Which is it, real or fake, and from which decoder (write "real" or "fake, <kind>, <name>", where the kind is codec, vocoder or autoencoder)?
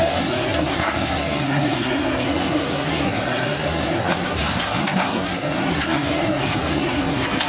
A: fake, codec, SNAC